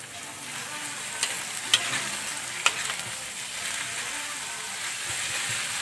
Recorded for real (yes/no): yes